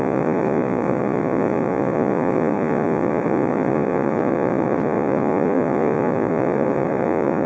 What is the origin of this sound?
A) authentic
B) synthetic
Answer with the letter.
B